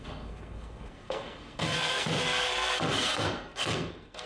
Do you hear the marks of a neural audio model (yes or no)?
yes